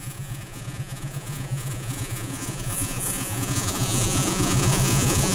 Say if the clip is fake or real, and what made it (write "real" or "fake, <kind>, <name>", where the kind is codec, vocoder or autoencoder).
fake, vocoder, Vocos